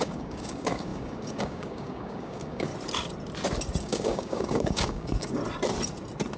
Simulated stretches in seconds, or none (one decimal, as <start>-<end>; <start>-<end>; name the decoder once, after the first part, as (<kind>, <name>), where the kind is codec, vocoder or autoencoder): 0.0-2.7 (codec, DAC); 3.8-5.4